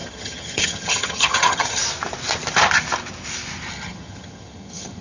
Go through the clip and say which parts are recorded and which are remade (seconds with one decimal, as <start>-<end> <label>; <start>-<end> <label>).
0.0-1.8 remade; 1.8-3.7 recorded; 3.7-5.0 remade